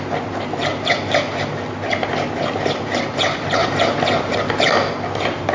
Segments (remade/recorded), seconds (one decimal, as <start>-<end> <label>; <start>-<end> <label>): 0.0-5.5 recorded